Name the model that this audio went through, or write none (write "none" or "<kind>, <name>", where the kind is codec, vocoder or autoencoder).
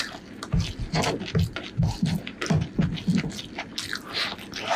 none